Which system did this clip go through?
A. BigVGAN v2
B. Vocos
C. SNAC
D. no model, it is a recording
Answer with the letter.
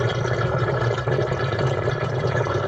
A